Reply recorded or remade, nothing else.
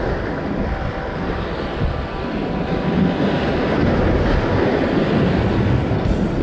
recorded